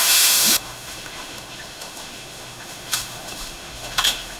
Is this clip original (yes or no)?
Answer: no